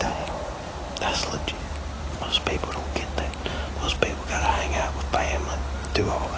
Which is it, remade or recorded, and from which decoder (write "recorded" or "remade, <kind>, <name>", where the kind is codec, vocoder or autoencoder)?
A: recorded